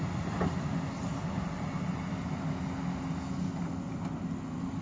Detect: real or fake real